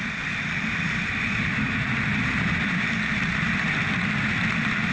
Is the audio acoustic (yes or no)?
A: no